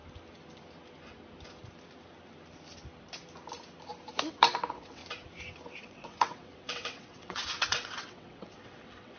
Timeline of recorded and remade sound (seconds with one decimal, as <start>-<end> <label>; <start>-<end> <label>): 0.0-4.3 recorded; 4.3-5.0 remade; 5.0-5.8 recorded; 5.8-9.2 remade